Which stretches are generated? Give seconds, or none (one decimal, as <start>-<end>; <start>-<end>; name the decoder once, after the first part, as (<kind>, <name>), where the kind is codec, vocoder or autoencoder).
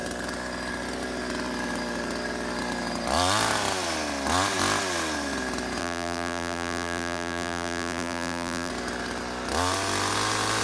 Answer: 5.8-8.7 (vocoder, BigVGAN v2)